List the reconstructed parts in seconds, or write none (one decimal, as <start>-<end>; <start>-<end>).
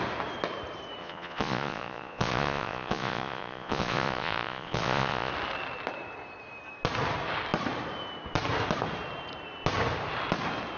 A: 1.0-5.3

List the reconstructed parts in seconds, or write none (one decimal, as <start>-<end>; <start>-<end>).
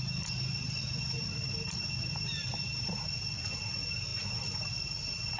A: 2.4-3.1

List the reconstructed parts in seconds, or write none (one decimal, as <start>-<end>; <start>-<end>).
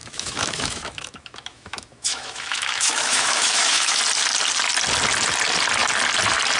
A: 0.0-4.0